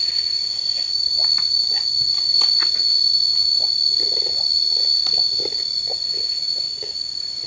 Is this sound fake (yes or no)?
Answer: no